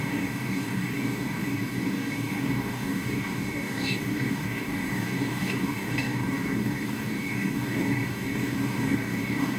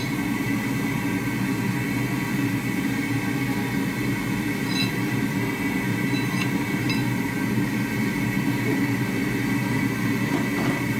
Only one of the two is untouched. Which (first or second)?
second